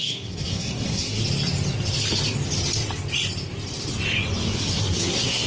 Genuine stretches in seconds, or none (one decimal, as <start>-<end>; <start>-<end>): 1.2-4.5